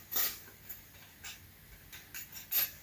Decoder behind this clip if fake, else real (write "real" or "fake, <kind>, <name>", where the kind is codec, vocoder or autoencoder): real